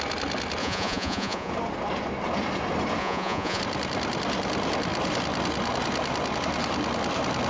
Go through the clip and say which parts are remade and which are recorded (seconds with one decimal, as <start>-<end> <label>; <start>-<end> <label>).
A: 0.0-0.6 recorded; 0.6-1.5 remade; 1.5-3.0 recorded; 3.0-3.6 remade; 3.6-7.5 recorded